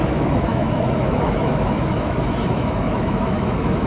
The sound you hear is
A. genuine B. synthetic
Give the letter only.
B